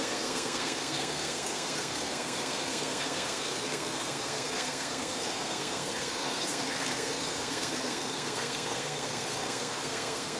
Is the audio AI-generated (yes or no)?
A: yes